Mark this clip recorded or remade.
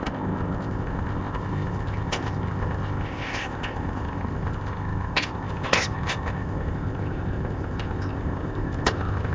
remade